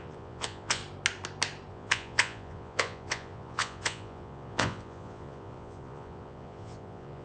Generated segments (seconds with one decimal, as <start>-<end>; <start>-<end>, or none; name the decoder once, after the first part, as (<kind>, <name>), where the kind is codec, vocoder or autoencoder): 0.0-0.8 (vocoder, Vocos); 1.7-7.2